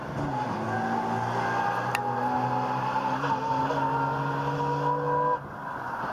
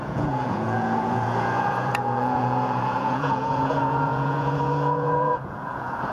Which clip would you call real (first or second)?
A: first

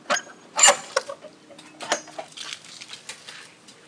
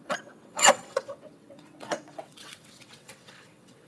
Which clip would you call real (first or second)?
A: first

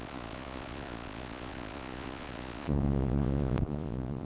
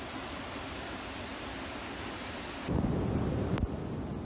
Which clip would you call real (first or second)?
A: second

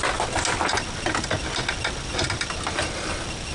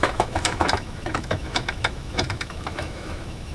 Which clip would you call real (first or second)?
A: first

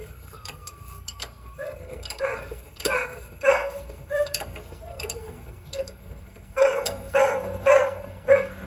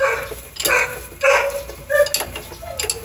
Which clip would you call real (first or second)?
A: second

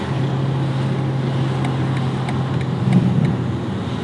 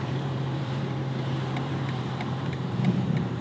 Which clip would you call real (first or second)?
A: first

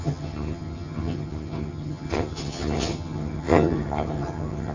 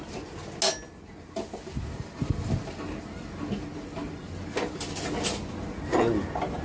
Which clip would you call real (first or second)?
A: second